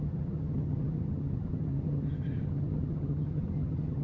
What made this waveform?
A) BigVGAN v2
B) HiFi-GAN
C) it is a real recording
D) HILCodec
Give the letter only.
B